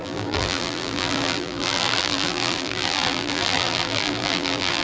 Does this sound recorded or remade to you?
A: remade